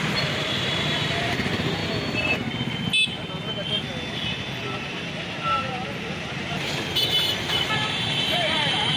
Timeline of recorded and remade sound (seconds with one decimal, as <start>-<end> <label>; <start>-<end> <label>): 0.0-1.8 remade; 1.8-6.0 recorded; 6.0-9.0 remade